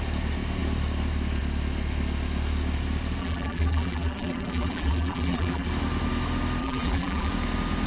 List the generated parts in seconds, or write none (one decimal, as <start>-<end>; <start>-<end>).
3.2-5.7; 6.6-7.3